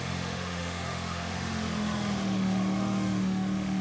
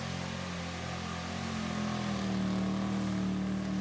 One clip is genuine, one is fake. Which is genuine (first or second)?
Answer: second